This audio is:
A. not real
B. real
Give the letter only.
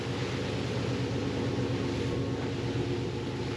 B